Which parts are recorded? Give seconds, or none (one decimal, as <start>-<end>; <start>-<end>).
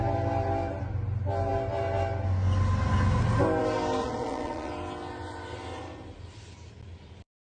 0.0-4.0; 4.7-7.4